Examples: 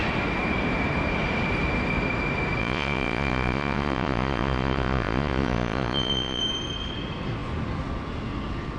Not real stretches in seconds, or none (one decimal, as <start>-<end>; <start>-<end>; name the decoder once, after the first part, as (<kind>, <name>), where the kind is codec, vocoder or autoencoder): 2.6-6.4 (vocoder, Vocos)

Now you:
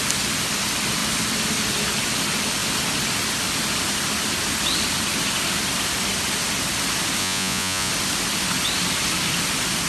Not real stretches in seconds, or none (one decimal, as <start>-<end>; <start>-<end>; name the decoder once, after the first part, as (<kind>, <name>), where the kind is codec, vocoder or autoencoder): 7.2-7.9 (vocoder, Vocos)

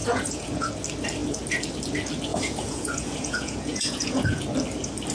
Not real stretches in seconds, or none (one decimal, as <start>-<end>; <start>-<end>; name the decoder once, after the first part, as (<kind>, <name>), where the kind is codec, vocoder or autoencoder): 0.0-0.7 (vocoder, Vocos); 2.3-4.4

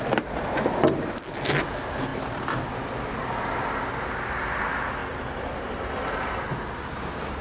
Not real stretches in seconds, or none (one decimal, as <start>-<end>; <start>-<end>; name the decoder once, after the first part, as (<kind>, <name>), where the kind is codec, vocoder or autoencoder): none

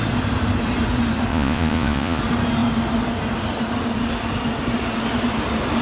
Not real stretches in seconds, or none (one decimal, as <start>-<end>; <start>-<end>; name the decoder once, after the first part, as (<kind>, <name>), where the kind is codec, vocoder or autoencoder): 1.3-2.2 (vocoder, Vocos)

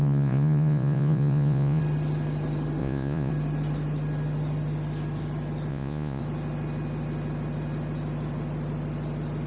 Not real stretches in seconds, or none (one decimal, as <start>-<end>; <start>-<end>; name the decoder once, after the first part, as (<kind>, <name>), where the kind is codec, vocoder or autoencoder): 0.0-1.8 (vocoder, Vocos); 2.8-3.3; 5.7-6.2